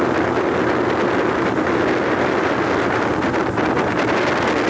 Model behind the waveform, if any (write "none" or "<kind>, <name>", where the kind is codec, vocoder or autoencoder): none